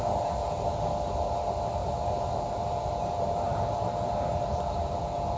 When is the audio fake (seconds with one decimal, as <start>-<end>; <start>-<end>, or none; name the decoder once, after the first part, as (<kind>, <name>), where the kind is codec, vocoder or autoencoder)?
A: 1.8-5.0 (vocoder, BigVGAN v2)